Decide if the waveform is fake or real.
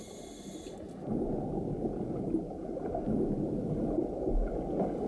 real